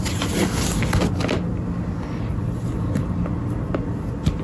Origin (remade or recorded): recorded